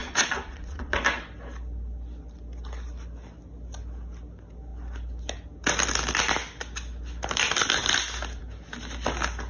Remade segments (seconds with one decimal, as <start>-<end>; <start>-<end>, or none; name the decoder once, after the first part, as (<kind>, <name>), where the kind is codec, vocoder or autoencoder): 0.0-1.0 (vocoder, Vocos)